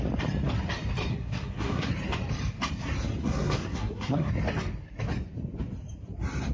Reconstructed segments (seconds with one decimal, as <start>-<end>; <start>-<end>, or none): 1.1-1.9; 3.2-4.3